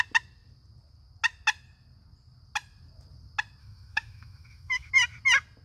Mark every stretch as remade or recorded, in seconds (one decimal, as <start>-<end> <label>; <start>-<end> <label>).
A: 0.0-3.6 recorded; 3.6-4.9 remade; 4.9-5.6 recorded